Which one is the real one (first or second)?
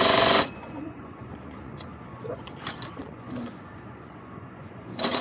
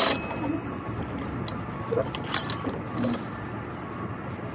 second